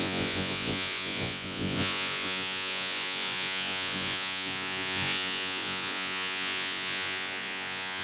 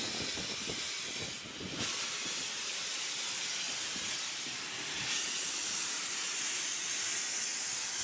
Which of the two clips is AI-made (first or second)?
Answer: first